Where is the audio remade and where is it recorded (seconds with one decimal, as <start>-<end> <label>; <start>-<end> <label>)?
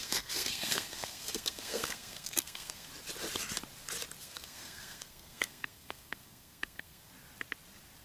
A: 0.0-2.9 remade; 2.9-4.2 recorded; 4.2-7.1 remade; 7.1-8.0 recorded